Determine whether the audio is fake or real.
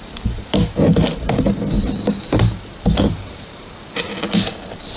fake